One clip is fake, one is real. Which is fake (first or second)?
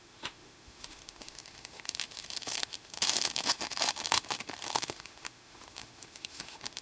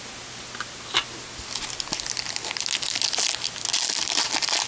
first